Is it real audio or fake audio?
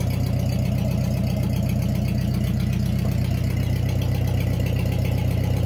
real